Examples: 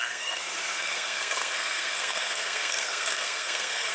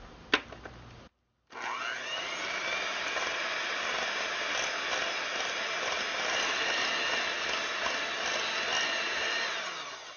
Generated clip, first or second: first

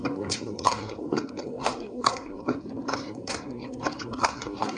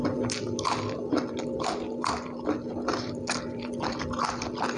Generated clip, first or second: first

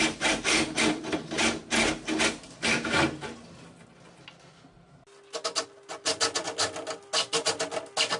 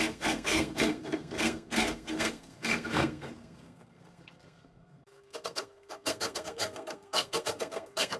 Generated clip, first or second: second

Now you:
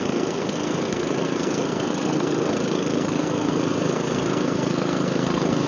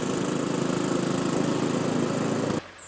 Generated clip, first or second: first